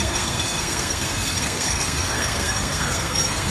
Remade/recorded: remade